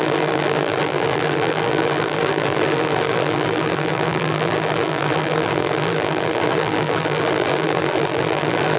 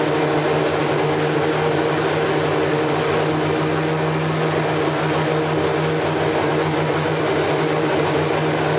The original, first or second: second